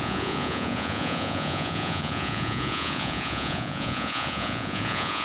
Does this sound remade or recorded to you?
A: remade